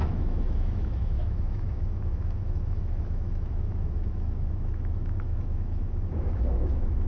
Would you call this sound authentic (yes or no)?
no